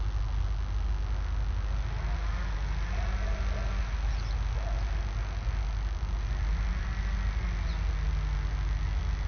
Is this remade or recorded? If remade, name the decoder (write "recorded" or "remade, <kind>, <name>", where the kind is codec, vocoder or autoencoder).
recorded